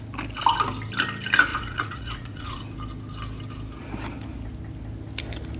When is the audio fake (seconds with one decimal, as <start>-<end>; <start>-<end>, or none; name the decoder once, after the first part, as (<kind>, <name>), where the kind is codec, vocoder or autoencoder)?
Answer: 1.5-2.6 (vocoder, Vocos)